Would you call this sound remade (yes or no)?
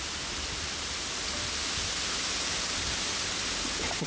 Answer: no